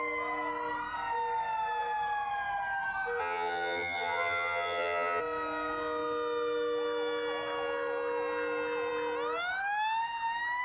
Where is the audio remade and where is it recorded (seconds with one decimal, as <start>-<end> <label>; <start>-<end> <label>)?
0.0-3.2 recorded; 3.2-5.2 remade; 5.2-10.6 recorded